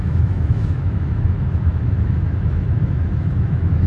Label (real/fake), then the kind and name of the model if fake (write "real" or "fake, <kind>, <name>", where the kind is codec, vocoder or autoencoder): fake, autoencoder, DAC-VAE